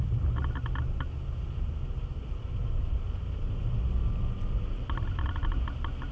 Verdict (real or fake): real